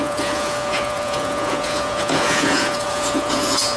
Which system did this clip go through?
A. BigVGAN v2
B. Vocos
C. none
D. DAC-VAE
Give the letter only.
B